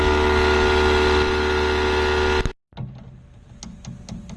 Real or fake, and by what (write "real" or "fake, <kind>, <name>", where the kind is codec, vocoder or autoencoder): real